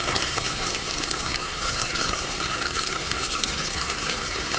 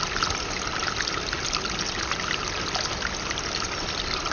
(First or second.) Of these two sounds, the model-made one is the first